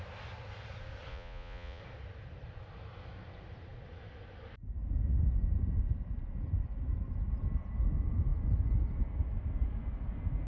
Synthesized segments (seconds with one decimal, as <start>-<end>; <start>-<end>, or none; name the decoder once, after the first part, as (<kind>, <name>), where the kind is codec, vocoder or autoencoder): 1.1-1.8 (vocoder, Vocos)

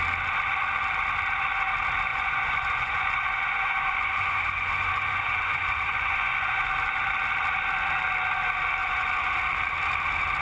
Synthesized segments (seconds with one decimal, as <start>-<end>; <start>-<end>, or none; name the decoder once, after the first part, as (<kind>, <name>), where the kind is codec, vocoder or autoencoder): 2.1-6.7 (vocoder, Vocos); 8.8-9.4

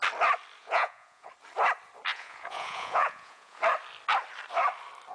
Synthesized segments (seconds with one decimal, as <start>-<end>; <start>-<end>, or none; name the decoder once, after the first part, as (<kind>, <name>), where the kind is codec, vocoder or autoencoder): 0.6-1.3 (vocoder, Vocos); 2.1-3.6